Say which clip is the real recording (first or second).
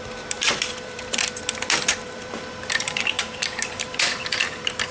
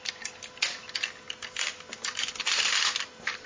second